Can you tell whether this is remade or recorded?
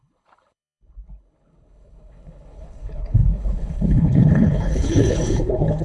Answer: remade